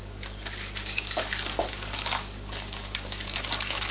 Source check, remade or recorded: remade